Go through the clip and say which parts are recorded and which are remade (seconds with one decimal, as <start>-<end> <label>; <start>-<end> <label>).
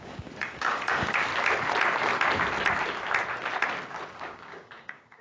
0.0-1.3 remade; 1.3-4.1 recorded; 4.1-5.2 remade